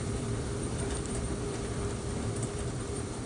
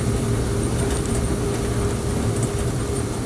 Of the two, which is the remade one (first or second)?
first